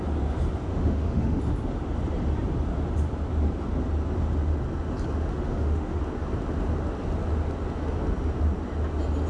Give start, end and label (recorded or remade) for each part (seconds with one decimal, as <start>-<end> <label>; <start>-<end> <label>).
0.0-0.7 recorded; 0.7-1.4 remade; 1.4-5.3 recorded; 5.3-6.0 remade; 6.0-9.3 recorded